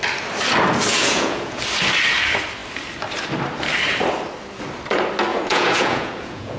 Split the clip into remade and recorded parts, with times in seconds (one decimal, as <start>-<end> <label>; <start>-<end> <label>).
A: 0.0-0.9 recorded; 0.9-1.6 remade; 1.6-5.3 recorded; 5.3-6.6 remade